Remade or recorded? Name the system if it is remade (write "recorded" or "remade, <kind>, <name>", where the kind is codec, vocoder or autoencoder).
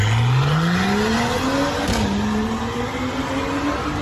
recorded